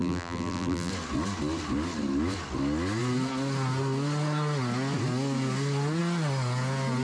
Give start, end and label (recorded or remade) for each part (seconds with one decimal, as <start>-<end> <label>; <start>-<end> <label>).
0.0-0.9 remade; 0.9-7.0 recorded